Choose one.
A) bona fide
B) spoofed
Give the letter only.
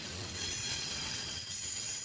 B